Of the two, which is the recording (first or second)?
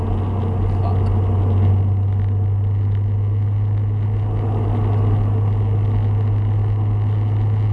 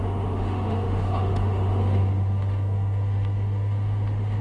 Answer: first